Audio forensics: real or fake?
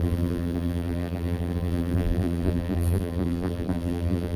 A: fake